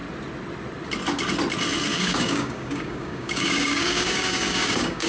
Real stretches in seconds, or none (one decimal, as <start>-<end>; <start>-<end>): 0.0-1.9